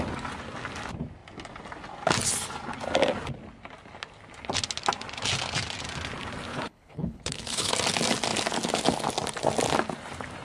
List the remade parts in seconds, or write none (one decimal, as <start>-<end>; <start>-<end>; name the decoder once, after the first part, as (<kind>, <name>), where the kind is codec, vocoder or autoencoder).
6.5-7.7 (codec, HILCodec)